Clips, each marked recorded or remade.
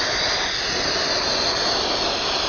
recorded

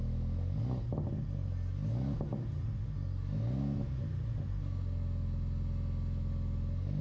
recorded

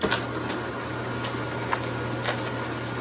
recorded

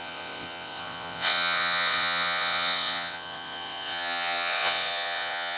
remade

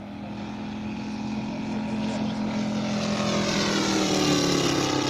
recorded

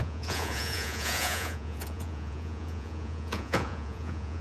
remade